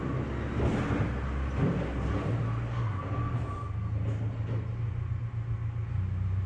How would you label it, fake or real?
real